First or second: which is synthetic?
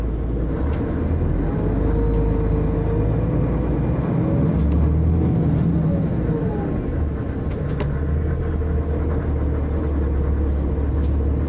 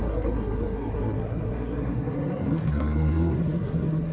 second